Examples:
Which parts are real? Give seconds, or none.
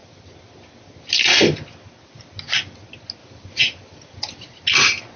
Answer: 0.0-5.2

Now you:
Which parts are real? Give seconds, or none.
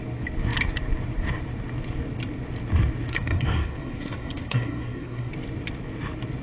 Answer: 0.0-3.1; 5.3-6.4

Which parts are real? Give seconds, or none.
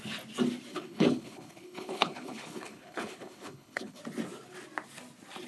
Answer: 0.0-0.7; 4.0-5.5